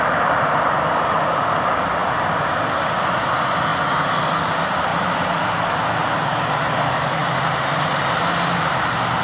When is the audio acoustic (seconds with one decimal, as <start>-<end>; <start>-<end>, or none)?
0.0-4.9; 5.7-7.2; 7.9-9.2